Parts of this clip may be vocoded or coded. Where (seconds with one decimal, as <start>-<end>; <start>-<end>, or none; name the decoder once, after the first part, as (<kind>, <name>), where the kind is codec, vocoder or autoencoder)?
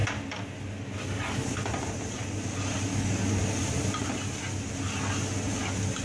2.9-3.6 (codec, DAC)